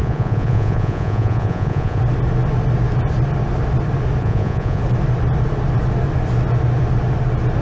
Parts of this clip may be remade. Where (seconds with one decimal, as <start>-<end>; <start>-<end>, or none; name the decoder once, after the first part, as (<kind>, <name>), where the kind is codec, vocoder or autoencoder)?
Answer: 0.0-2.0 (vocoder, Vocos); 4.2-4.8

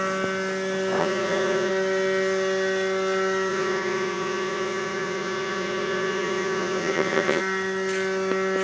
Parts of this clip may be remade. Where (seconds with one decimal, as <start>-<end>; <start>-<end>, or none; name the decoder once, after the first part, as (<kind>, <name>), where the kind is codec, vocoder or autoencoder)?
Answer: 1.0-1.7 (vocoder, Vocos); 3.5-7.4

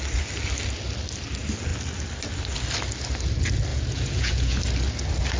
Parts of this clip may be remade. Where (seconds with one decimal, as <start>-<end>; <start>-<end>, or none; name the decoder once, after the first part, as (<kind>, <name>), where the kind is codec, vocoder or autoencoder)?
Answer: 3.7-4.6 (vocoder, Vocos)

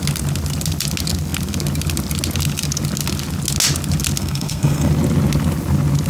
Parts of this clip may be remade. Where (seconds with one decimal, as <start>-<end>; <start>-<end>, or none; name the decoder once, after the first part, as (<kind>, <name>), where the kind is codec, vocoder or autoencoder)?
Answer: 4.2-4.9 (codec, SNAC)

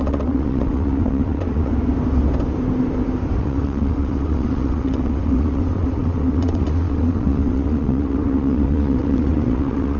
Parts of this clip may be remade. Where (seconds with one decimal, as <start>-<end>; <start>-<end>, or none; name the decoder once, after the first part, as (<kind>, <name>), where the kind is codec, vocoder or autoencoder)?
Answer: 0.0-1.7 (vocoder, WaveNeXt); 3.4-10.0